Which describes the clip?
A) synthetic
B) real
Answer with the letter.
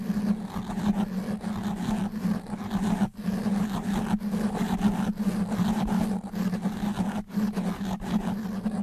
B